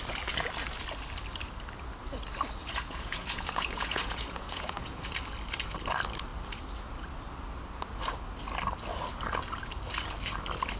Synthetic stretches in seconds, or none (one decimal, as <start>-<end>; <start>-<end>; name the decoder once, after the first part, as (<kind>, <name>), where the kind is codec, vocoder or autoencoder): 2.6-5.1 (vocoder, Vocos)